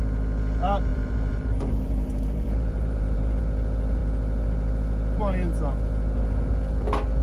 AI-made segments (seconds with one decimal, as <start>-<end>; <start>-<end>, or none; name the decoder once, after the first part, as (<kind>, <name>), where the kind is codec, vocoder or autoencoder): 0.9-3.4 (vocoder, BigVGAN v2)